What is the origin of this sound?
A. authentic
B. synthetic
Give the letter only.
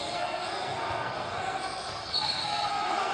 B